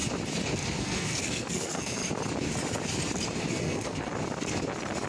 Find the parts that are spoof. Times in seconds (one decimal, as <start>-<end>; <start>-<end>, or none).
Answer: 0.8-2.0; 3.5-4.1